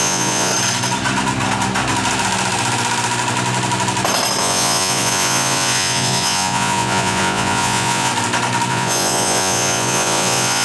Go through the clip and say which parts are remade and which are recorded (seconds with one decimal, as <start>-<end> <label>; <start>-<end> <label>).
0.0-0.5 remade; 0.5-4.4 recorded; 4.4-8.1 remade; 8.1-8.7 recorded; 8.7-10.6 remade